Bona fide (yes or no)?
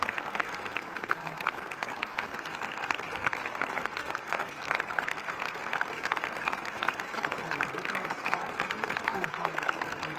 no